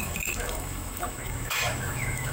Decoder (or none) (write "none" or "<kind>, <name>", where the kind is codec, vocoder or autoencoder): autoencoder, DAC-VAE